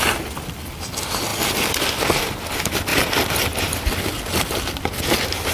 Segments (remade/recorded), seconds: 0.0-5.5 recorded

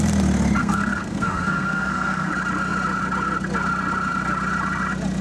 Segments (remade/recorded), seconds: 0.0-0.6 recorded; 0.6-2.3 remade; 2.3-5.2 recorded